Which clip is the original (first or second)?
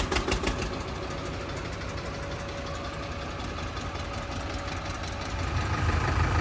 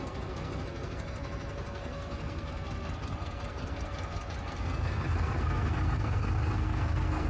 first